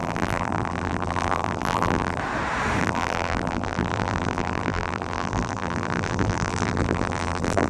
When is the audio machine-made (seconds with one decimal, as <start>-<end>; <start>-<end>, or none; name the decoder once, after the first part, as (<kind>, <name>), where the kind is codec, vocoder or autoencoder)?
0.0-2.2 (vocoder, BigVGAN v2); 2.8-7.7